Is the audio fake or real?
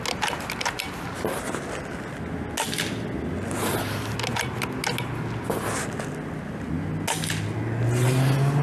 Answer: real